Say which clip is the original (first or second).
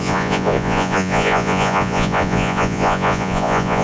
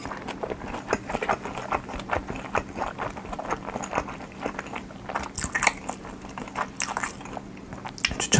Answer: second